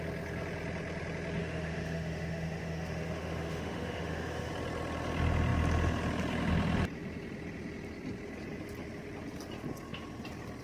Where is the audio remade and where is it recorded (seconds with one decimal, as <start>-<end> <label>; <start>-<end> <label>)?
0.0-1.4 recorded; 1.4-4.5 remade; 4.5-10.6 recorded